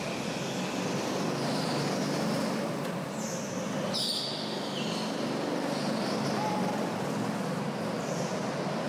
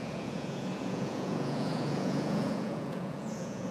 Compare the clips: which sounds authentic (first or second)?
first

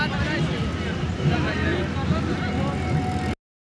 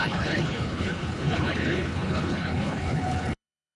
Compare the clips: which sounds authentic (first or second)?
first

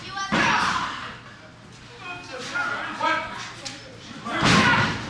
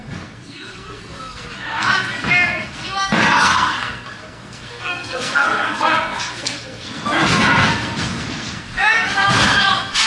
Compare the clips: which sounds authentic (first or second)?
first